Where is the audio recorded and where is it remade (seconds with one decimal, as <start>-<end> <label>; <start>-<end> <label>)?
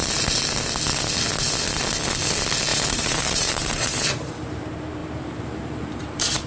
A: 0.0-2.7 recorded; 2.7-4.6 remade; 4.6-5.0 recorded; 5.0-6.5 remade